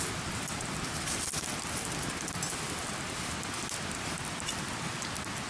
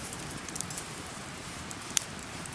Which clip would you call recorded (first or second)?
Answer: first